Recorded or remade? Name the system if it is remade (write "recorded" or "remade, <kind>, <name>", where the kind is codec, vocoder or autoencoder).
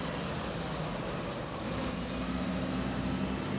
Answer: recorded